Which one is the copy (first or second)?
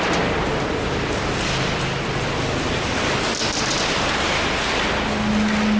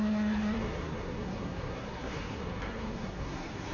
second